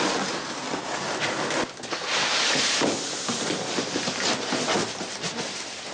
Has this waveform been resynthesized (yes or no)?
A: no